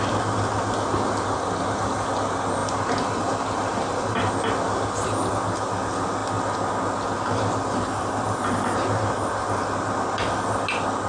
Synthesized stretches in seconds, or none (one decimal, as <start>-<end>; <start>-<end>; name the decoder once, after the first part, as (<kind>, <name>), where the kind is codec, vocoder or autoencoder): 2.6-4.3 (vocoder, BigVGAN v2)